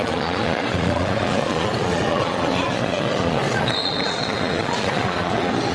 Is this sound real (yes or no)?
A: no